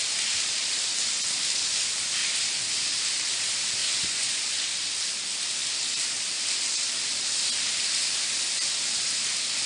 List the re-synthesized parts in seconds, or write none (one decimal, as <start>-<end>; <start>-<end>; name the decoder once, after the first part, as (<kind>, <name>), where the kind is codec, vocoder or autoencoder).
3.8-4.4 (vocoder, Vocos)